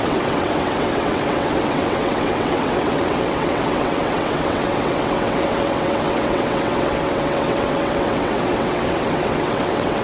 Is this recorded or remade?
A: remade